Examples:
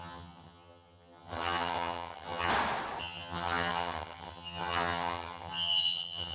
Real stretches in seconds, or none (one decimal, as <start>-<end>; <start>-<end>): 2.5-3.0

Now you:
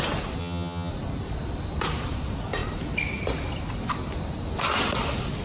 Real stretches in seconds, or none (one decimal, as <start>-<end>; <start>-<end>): 0.0-0.4; 0.9-5.4

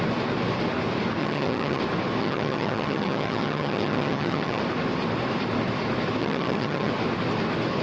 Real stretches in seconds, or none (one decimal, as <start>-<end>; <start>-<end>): 0.0-1.2; 1.8-2.2; 4.6-6.2; 6.9-7.8

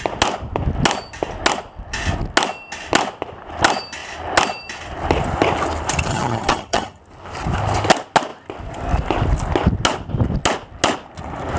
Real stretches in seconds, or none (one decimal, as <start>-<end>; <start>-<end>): 0.0-6.1; 7.0-11.6

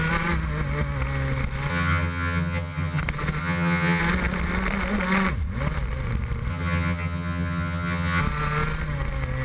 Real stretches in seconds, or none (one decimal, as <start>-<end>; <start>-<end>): 0.0-1.7; 3.0-3.4; 4.0-6.5; 8.2-9.4